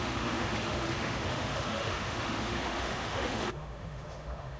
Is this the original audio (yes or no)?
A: no